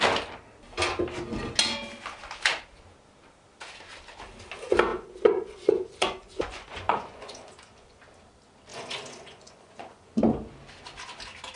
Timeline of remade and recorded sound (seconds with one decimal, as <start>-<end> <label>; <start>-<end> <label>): 0.0-4.9 recorded; 4.9-8.0 remade; 8.0-8.7 recorded; 8.7-10.2 remade; 10.2-11.6 recorded